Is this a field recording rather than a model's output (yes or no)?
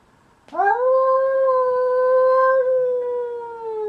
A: yes